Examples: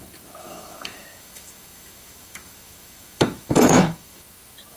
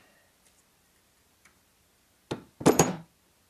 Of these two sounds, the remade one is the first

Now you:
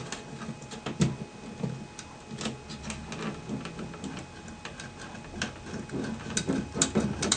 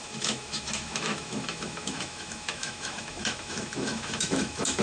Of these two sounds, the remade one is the second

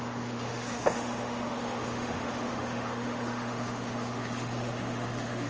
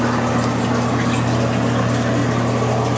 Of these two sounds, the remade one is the first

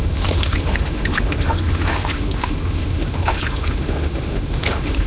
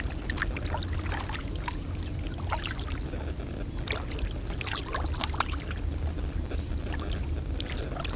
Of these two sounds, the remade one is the first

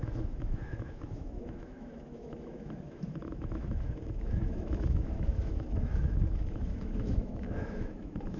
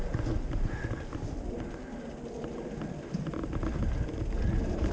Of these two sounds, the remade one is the first